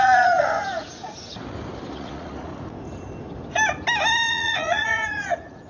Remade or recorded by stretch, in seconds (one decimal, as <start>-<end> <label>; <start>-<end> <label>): 0.0-1.4 remade; 1.4-1.9 recorded; 1.9-2.5 remade; 2.5-4.3 recorded; 4.3-5.7 remade